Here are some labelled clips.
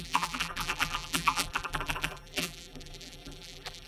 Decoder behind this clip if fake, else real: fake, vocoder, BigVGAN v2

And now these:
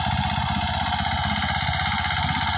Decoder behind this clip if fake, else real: real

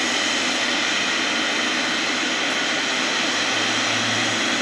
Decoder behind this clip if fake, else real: real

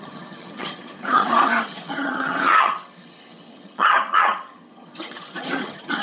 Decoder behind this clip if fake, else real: fake, vocoder, HiFi-GAN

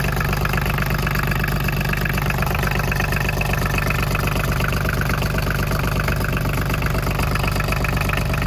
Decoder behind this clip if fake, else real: real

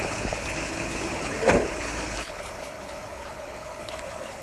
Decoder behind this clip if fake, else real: fake, codec, HILCodec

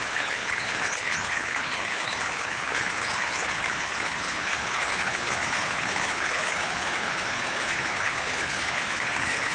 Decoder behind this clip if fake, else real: fake, codec, HILCodec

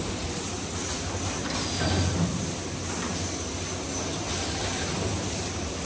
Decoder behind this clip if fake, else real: real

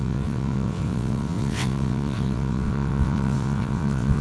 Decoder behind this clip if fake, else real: fake, vocoder, WaveNeXt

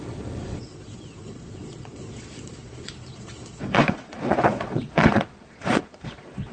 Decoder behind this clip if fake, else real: fake, vocoder, Vocos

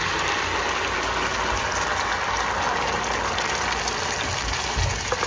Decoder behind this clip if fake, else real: real